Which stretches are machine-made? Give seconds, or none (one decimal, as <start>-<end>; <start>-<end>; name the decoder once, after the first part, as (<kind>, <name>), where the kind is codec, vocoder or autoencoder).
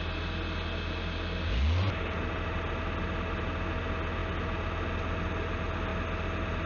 none